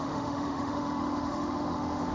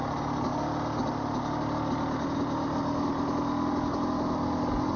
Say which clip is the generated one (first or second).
first